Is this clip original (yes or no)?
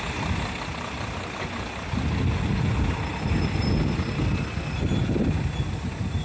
yes